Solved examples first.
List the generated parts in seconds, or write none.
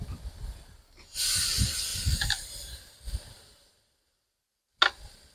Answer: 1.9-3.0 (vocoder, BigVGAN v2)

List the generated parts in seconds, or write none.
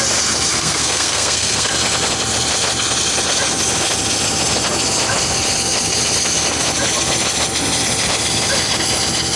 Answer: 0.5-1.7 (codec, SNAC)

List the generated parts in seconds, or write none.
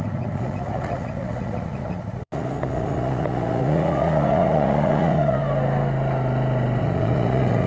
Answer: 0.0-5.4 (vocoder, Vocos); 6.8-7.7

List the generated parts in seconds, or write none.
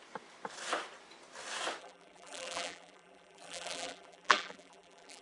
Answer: 1.8-5.2 (vocoder, BigVGAN v2)